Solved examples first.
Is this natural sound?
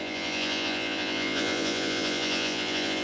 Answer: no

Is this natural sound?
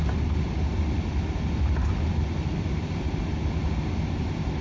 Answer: yes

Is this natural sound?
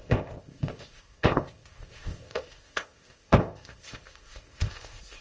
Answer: no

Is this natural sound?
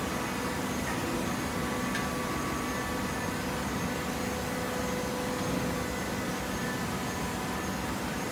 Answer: yes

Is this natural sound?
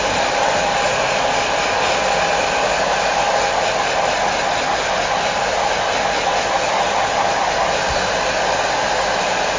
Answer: yes